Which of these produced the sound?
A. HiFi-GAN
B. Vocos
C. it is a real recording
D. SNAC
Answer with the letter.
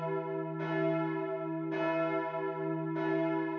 C